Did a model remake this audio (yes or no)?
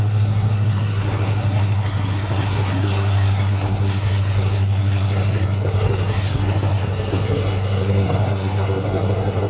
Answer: yes